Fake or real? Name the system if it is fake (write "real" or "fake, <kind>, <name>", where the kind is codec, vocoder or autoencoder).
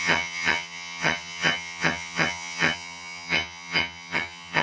fake, vocoder, HiFi-GAN